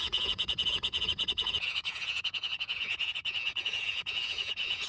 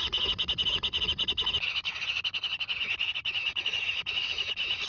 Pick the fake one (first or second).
first